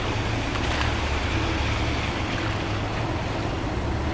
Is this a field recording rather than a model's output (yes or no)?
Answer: yes